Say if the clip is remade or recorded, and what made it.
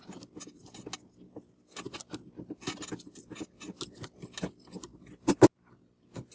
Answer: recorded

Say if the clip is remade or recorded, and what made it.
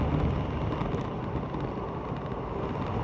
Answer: recorded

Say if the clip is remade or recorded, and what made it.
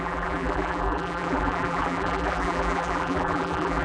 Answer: remade, vocoder, BigVGAN v2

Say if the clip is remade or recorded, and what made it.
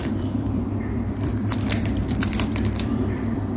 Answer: remade, vocoder, BigVGAN v2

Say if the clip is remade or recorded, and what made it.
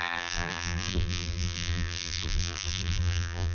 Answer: remade, vocoder, BigVGAN v2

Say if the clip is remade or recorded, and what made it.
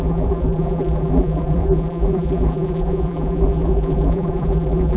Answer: remade, vocoder, BigVGAN v2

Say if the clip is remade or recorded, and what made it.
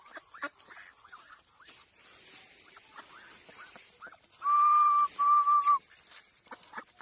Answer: remade, vocoder, BigVGAN v2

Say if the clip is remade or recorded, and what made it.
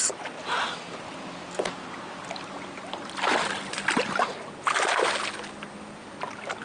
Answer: recorded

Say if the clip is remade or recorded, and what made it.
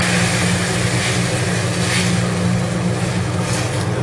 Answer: recorded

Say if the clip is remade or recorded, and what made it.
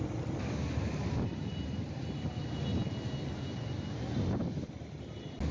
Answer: recorded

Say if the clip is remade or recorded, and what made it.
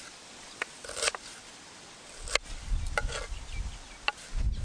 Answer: recorded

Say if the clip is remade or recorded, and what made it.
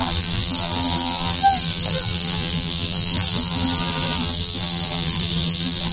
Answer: remade, vocoder, BigVGAN v2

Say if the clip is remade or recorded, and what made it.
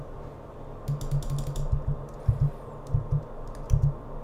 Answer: recorded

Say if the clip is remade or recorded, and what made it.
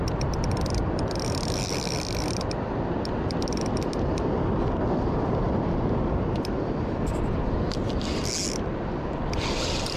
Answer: recorded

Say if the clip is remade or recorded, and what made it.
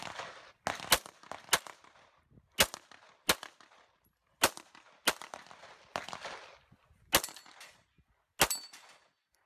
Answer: recorded